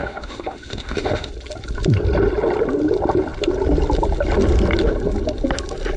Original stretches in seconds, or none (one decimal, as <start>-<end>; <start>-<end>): 1.3-6.0